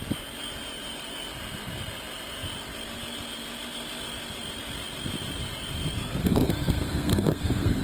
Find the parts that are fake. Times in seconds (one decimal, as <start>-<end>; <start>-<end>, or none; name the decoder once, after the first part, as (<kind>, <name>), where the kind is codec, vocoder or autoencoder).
6.2-7.8 (codec, SNAC)